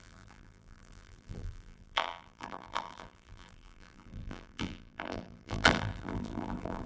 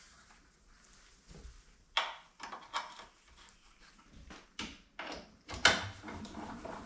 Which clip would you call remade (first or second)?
first